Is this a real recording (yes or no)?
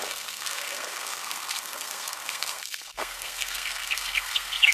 no